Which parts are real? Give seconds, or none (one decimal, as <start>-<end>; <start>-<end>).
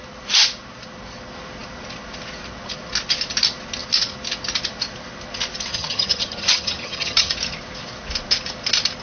0.0-5.7; 7.3-9.0